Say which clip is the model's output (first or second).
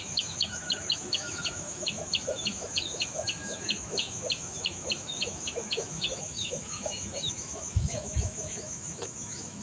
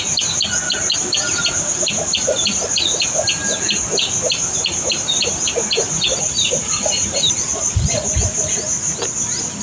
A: first